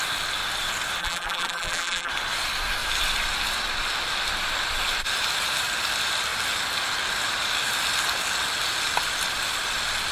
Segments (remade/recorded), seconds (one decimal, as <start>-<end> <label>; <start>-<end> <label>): 0.0-1.0 recorded; 1.0-2.1 remade; 2.1-10.1 recorded